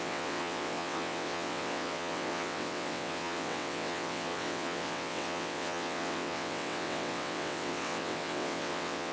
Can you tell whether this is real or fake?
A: fake